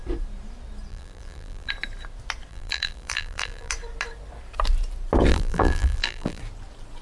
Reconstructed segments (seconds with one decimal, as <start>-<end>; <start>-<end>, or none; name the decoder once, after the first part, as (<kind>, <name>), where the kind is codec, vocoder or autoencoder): 0.9-1.7 (vocoder, BigVGAN v2); 2.5-3.7; 5.3-6.4

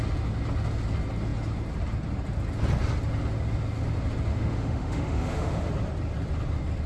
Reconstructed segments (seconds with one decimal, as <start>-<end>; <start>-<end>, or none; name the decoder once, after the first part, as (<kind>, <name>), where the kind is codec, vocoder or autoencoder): 4.3-5.7 (autoencoder, DAC-VAE)

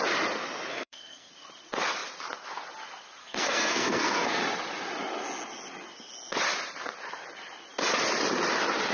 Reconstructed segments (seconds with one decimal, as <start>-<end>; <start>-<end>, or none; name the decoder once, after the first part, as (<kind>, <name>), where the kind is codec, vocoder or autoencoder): 0.7-1.3 (codec, SNAC); 3.2-4.4

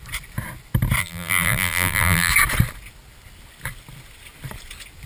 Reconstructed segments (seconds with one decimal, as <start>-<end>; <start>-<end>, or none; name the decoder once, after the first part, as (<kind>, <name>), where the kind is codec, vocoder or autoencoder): 1.0-2.3 (vocoder, BigVGAN v2)

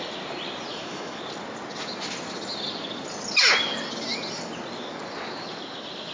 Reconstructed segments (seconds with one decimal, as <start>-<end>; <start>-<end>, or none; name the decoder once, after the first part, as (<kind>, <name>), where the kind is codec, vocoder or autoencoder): 0.7-1.2 (autoencoder, DAC-VAE)

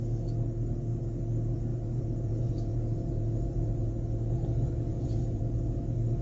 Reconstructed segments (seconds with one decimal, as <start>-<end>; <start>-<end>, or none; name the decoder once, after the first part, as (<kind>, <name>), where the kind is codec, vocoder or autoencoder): 1.7-3.9 (vocoder, Vocos); 4.9-5.4

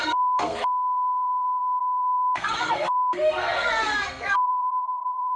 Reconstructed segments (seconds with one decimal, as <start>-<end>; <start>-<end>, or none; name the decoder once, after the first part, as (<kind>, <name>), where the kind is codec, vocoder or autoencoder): 0.0-5.4 (codec, SNAC)